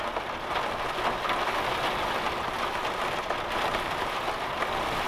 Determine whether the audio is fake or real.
real